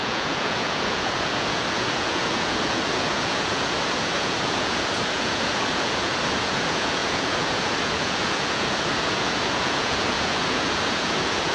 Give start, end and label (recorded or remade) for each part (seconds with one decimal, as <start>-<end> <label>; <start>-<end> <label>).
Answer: 0.0-11.5 remade